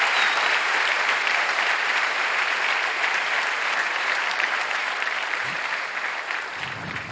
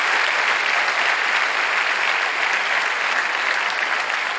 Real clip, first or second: second